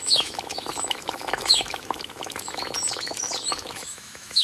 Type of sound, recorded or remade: remade